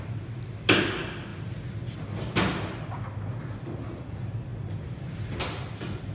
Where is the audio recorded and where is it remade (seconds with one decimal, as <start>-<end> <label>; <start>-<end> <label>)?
0.0-6.1 recorded

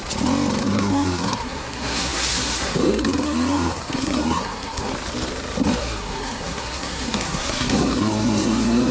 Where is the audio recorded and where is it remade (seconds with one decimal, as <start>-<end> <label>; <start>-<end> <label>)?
0.0-0.6 recorded; 0.6-4.9 remade; 4.9-5.8 recorded; 5.8-8.9 remade

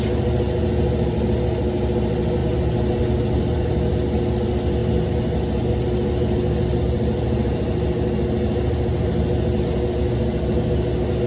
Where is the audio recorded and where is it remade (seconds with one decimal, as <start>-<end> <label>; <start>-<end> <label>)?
0.0-11.3 recorded

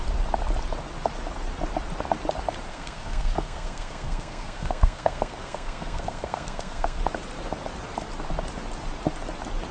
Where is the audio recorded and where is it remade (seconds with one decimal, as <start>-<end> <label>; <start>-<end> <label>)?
0.0-2.7 recorded; 2.7-7.0 remade; 7.0-9.7 recorded

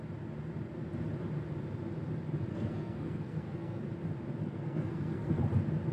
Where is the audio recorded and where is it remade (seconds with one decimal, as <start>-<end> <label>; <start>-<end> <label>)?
0.0-2.5 recorded; 2.5-3.8 remade; 3.8-4.4 recorded; 4.4-5.4 remade; 5.4-5.9 recorded

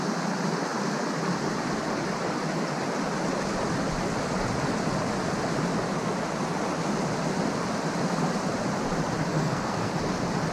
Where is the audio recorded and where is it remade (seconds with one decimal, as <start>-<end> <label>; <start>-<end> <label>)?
0.0-9.3 recorded; 9.3-9.9 remade; 9.9-10.5 recorded

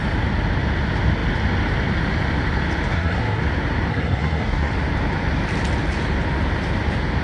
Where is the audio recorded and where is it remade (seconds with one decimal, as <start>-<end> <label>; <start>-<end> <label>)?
0.0-2.9 recorded; 2.9-3.4 remade; 3.4-3.9 recorded; 3.9-4.7 remade; 4.7-7.2 recorded